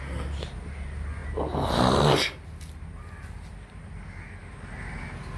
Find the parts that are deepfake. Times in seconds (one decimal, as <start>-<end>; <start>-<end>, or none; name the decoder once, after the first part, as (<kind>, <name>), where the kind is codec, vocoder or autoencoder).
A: none